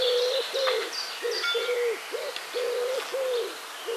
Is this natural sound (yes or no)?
yes